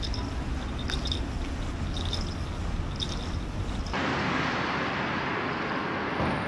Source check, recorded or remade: recorded